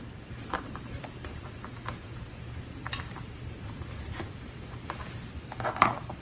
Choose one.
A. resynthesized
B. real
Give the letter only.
B